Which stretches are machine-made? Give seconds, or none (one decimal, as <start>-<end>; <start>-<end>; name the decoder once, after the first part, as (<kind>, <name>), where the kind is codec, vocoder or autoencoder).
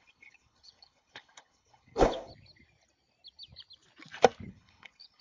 0.0-2.3 (codec, HILCodec); 4.5-5.2